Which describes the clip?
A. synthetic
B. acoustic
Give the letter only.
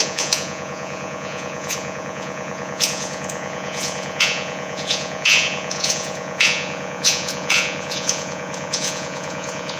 A